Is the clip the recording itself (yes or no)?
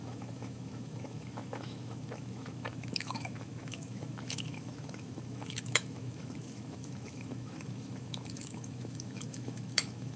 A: no